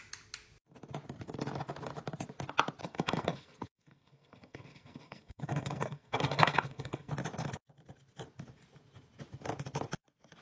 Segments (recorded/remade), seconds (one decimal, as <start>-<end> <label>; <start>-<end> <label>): 0.0-2.8 recorded; 2.8-7.1 remade; 7.1-10.4 recorded